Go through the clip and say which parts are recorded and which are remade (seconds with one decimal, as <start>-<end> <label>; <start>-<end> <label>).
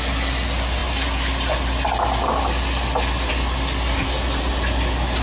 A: 0.0-5.2 recorded